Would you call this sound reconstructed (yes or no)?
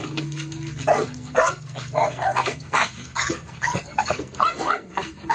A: yes